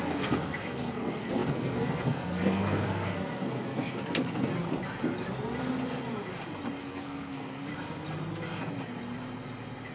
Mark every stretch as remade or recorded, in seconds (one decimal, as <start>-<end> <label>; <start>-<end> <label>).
0.0-4.5 remade; 4.5-6.8 recorded; 6.8-7.7 remade; 7.7-9.9 recorded